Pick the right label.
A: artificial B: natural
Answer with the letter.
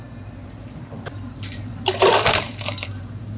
A